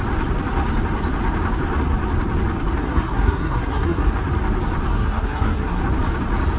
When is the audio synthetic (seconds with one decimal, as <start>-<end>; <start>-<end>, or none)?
2.8-4.1; 4.9-5.8